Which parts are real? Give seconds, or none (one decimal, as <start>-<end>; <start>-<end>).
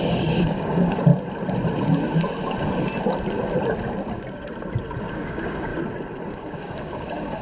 1.1-5.0; 5.7-6.2